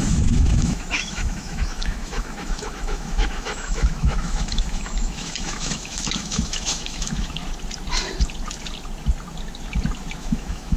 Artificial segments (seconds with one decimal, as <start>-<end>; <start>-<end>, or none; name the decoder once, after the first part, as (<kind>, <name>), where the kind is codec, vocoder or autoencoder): 0.0-7.4 (autoencoder, DAC-VAE); 10.2-10.8

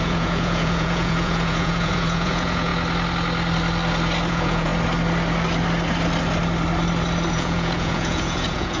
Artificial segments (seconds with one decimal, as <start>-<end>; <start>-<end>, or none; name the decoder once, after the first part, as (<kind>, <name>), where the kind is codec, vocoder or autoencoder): 0.0-2.7 (vocoder, Vocos); 4.3-4.7; 7.3-8.8